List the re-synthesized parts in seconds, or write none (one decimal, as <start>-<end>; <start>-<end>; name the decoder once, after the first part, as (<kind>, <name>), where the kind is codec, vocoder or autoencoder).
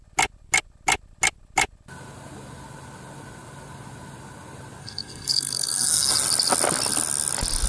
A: 4.8-6.1 (codec, SNAC)